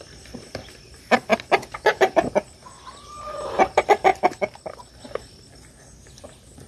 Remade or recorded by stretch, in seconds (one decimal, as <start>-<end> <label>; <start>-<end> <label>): 0.0-6.7 recorded